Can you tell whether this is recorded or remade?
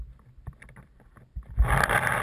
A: recorded